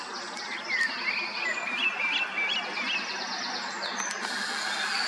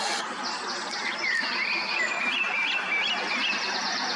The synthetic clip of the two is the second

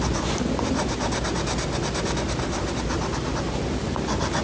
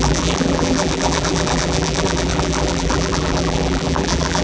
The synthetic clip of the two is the second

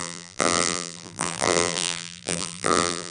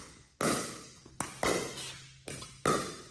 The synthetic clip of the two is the first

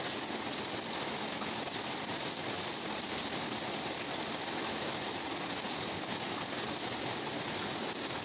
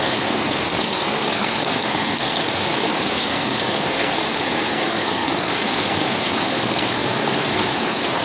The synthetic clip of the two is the second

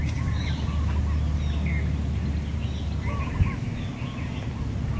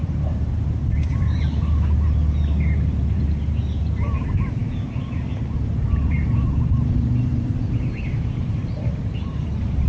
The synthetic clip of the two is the second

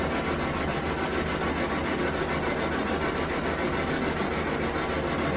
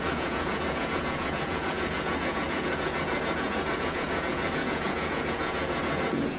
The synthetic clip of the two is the second